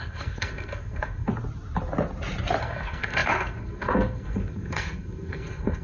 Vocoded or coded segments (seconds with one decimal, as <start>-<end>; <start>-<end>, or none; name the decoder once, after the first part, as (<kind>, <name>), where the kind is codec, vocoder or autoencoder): 0.0-1.3 (codec, SNAC); 2.6-5.8

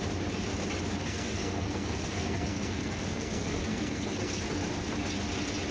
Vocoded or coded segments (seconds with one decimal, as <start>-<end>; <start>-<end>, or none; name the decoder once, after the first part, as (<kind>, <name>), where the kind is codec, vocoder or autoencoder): 1.0-4.4 (codec, SNAC)

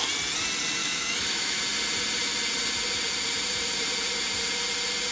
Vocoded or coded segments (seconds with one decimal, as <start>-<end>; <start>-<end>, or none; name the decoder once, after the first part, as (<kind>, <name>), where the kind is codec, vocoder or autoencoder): 0.8-1.6 (autoencoder, DAC-VAE)

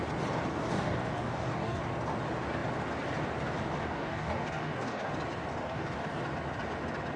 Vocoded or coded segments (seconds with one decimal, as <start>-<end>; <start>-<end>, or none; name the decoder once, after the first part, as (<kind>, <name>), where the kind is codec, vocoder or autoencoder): 0.5-1.8 (codec, DAC); 3.8-5.1; 5.5-6.2